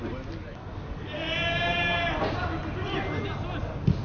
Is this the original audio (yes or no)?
yes